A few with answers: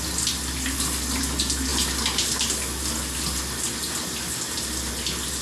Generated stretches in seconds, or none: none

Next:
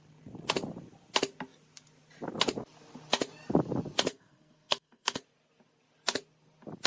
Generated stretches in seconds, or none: 4.1-5.2 (codec, SNAC)

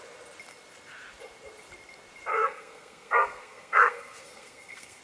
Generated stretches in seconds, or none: 2.3-5.0 (codec, SNAC)

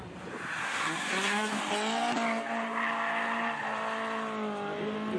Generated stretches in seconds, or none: 0.6-1.6 (codec, SNAC)

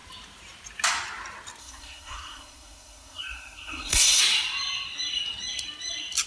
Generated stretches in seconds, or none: 1.6-4.2 (codec, SNAC)

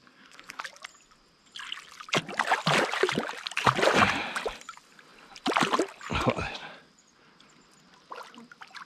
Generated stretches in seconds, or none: 0.0-0.6 (codec, SNAC)

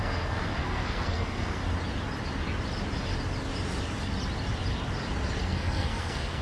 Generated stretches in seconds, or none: 0.0-1.6 (codec, SNAC); 5.4-6.4